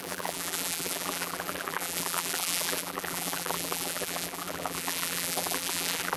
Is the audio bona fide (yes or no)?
no